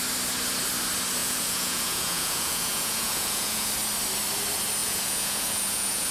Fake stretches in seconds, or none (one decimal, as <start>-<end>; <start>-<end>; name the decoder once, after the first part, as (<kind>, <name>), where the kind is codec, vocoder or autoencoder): 1.2-3.7 (vocoder, Vocos); 4.8-6.1